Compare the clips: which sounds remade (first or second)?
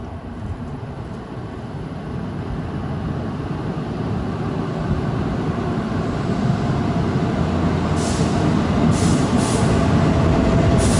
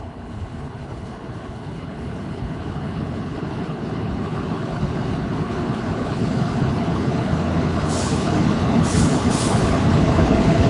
second